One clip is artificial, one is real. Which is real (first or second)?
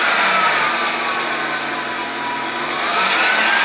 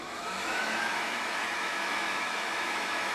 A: first